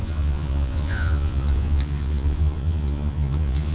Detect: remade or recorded remade